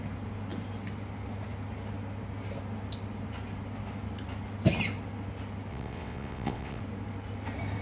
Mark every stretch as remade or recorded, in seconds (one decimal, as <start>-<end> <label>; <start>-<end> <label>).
0.0-5.7 recorded; 5.7-6.8 remade; 6.8-7.8 recorded